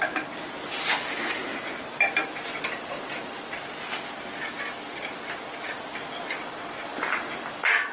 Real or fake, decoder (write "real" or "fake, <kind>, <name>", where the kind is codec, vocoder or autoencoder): real